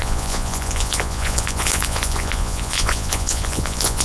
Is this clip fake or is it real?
fake